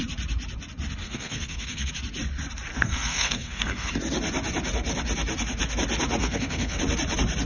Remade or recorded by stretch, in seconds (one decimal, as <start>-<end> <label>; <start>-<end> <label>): 0.0-1.0 recorded; 1.0-1.9 remade; 1.9-2.7 recorded; 2.7-3.9 remade; 3.9-6.2 recorded; 6.2-6.8 remade; 6.8-7.5 recorded